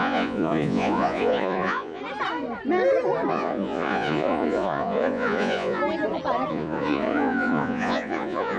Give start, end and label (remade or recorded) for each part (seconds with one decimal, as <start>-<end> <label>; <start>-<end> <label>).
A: 0.0-2.0 remade; 2.0-3.3 recorded; 3.3-5.8 remade; 5.8-6.5 recorded; 6.5-8.6 remade